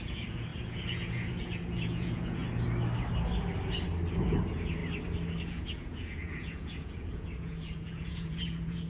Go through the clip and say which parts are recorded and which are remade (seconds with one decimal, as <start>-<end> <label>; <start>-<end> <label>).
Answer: 0.0-2.4 remade; 2.4-4.2 recorded; 4.2-4.8 remade; 4.8-5.4 recorded; 5.4-8.9 remade